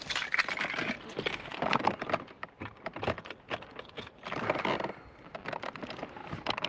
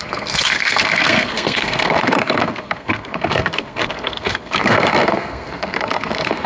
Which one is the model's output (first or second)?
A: second